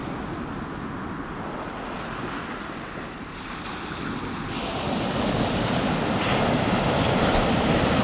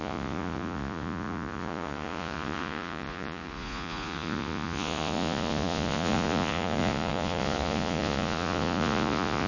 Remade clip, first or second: second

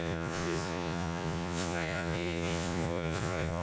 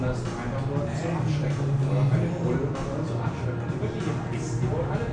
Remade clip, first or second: first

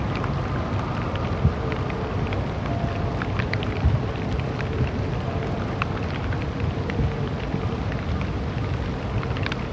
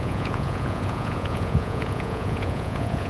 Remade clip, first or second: second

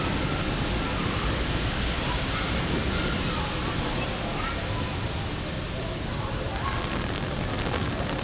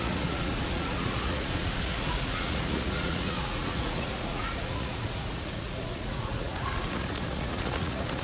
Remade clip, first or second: second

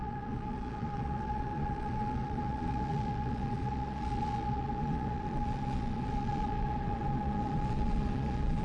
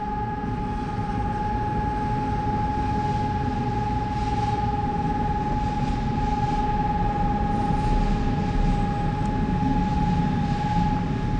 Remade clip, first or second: first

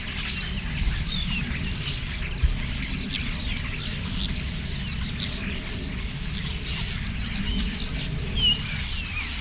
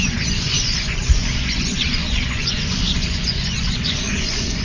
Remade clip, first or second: second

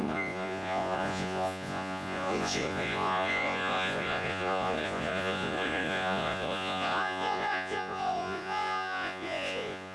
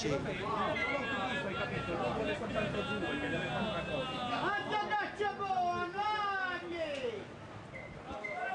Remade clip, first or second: first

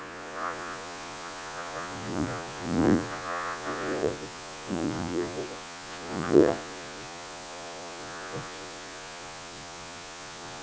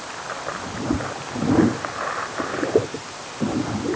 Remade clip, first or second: first